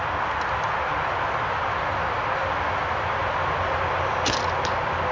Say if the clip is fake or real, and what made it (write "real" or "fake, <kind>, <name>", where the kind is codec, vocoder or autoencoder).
real